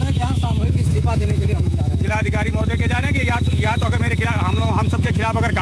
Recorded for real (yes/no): no